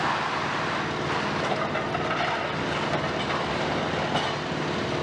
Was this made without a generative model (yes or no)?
yes